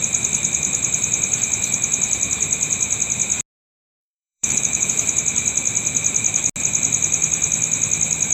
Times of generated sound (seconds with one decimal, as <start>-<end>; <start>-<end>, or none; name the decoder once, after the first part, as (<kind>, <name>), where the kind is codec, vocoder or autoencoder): 4.0-4.9 (autoencoder, DAC-VAE)